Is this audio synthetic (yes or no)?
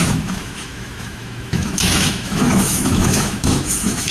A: yes